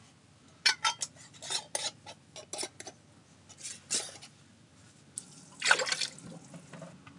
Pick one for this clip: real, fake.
real